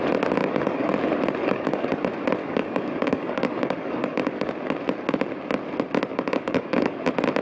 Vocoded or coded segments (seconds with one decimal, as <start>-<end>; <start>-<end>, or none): 0.4-0.9; 1.4-2.0; 2.4-4.5; 6.1-7.0